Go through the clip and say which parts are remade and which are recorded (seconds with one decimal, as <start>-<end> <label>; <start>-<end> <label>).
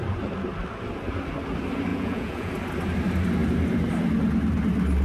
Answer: 0.0-1.9 recorded; 1.9-2.5 remade; 2.5-5.0 recorded